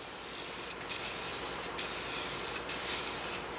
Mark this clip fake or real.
real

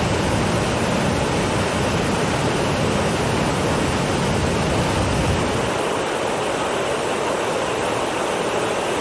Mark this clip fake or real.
real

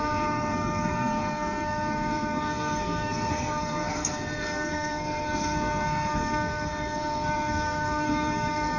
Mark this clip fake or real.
fake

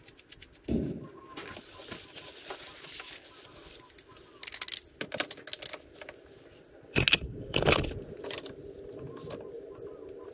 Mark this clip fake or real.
real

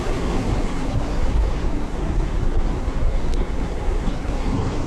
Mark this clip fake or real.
fake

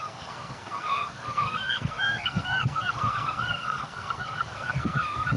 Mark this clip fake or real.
fake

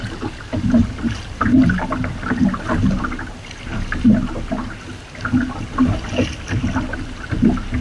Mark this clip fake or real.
real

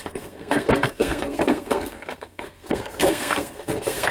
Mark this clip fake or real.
fake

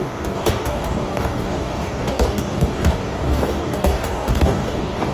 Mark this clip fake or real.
fake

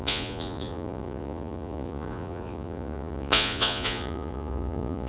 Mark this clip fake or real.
fake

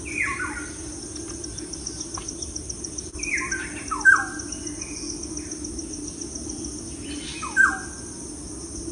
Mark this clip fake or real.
real